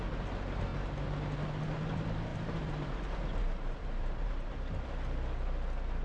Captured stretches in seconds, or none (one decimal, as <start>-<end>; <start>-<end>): 0.0-2.3; 4.8-6.0